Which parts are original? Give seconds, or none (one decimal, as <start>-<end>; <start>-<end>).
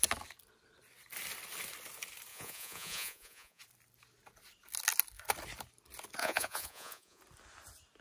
0.0-2.3; 3.6-6.2; 7.2-8.0